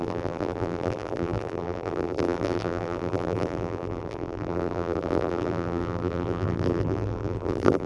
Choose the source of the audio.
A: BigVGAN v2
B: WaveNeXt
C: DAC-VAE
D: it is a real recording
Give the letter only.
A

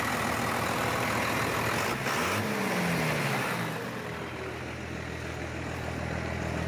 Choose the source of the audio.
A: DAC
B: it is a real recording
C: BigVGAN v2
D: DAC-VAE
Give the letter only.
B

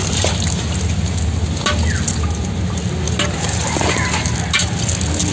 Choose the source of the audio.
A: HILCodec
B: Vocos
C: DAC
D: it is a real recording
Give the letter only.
D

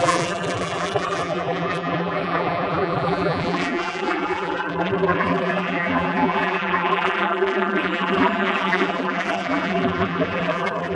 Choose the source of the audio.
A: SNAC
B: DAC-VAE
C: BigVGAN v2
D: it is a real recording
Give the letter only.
C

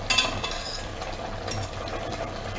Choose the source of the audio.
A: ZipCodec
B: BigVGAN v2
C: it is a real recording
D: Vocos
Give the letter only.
C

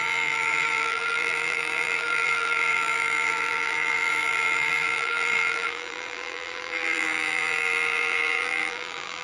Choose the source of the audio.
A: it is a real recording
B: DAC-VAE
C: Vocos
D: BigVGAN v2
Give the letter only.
D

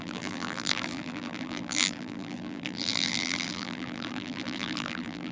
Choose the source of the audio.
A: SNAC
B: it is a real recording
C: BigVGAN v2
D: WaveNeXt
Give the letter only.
C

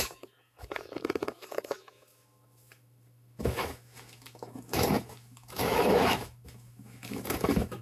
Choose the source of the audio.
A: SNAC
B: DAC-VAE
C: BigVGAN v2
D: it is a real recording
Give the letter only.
B